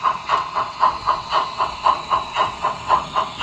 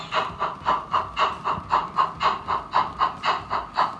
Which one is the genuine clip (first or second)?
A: second